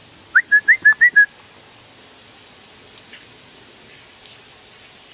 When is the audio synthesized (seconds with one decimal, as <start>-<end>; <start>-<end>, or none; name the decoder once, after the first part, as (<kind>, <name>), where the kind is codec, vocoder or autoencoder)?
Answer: 1.0-5.1 (vocoder, BigVGAN v2)